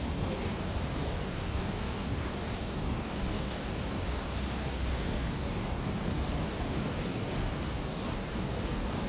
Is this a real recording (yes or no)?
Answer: no